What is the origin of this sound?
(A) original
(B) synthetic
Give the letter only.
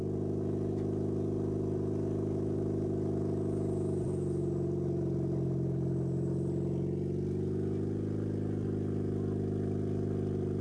A